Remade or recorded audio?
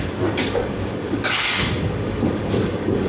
remade